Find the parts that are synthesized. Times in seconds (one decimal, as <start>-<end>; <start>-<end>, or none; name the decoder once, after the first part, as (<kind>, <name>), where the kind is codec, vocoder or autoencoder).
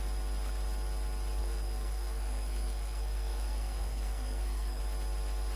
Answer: 1.4-4.8 (codec, SNAC)